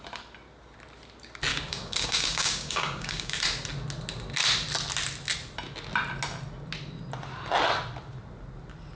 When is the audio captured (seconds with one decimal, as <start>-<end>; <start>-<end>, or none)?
0.0-1.5; 3.4-9.0